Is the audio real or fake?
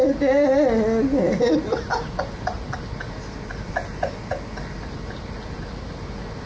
real